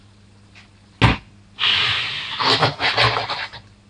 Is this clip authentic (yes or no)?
yes